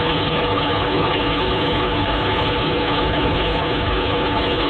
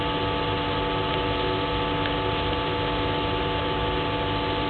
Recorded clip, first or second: second